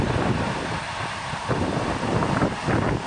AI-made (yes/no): no